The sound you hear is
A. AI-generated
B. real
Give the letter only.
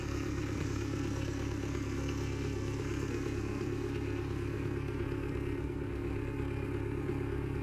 A